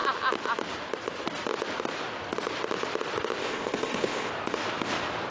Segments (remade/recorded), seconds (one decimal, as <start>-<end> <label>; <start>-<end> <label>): 0.0-3.4 recorded; 3.4-4.3 remade; 4.3-5.3 recorded

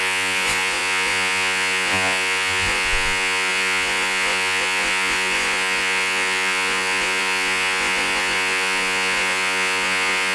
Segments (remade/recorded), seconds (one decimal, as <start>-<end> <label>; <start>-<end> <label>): 0.0-10.3 remade

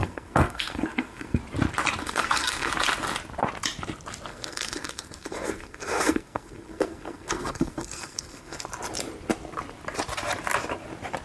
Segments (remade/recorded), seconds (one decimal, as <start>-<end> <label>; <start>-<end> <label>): 0.0-1.4 remade; 1.4-2.0 recorded; 2.0-2.7 remade; 2.7-4.3 recorded; 4.3-8.6 remade; 8.6-11.2 recorded

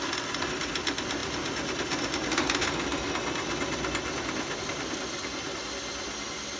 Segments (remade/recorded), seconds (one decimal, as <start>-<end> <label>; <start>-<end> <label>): 0.0-6.6 recorded

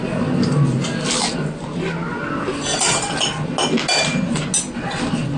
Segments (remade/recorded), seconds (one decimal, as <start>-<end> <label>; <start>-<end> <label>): 0.0-5.4 recorded